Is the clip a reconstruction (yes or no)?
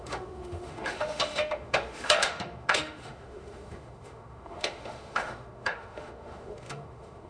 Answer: yes